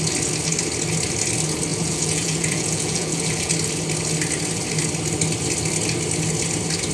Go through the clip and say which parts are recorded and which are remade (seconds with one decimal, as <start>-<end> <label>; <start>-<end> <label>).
0.0-1.7 recorded; 1.7-3.5 remade; 3.5-6.9 recorded